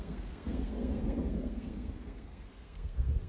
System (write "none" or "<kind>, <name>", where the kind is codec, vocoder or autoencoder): codec, SNAC